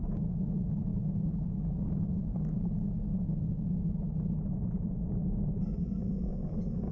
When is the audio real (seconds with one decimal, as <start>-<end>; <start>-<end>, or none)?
0.0-6.9